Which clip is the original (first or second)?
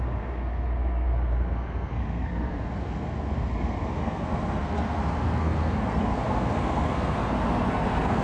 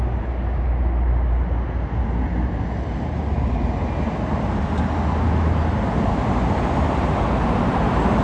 second